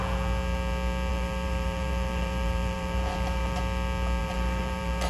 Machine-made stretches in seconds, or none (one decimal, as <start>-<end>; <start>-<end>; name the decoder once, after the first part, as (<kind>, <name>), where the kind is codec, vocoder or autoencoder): 1.1-3.6 (vocoder, BigVGAN v2); 4.2-5.1